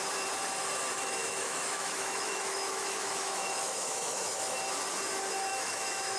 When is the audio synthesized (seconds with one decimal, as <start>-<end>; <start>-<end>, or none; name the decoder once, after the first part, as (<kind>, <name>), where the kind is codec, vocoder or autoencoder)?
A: 0.9-4.6 (autoencoder, DAC-VAE); 5.5-6.2